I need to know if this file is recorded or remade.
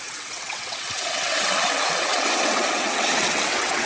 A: remade